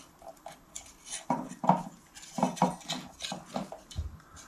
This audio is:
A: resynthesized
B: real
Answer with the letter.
B